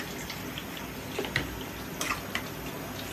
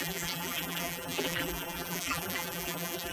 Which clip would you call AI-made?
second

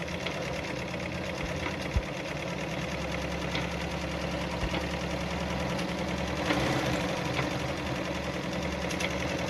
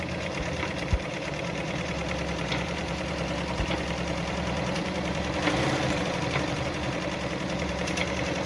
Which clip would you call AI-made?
second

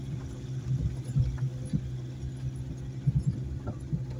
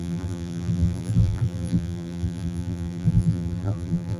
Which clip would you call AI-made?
second